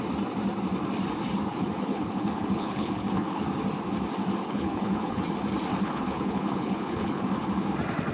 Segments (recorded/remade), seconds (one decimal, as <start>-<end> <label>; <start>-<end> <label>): 0.0-1.5 recorded; 1.5-3.4 remade; 3.4-4.4 recorded; 4.4-5.3 remade; 5.3-5.7 recorded; 5.7-7.3 remade; 7.3-8.1 recorded